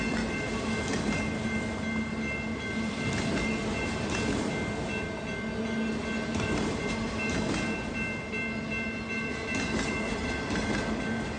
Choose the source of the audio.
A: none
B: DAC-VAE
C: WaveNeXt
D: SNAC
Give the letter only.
A